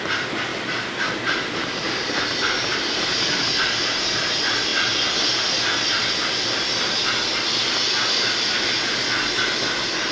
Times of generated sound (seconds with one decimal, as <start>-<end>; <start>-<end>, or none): 0.5-4.3